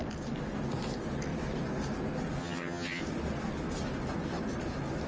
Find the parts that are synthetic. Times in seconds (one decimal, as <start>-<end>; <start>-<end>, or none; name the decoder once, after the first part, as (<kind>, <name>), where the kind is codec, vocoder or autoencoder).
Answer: 2.4-3.0 (vocoder, HiFi-GAN)